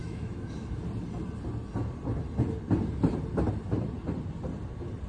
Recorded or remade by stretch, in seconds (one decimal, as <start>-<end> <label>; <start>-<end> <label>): 0.0-0.8 remade; 0.8-5.1 recorded